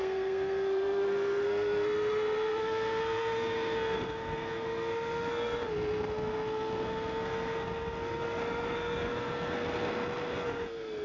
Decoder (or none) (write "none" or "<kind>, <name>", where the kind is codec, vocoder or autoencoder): codec, SNAC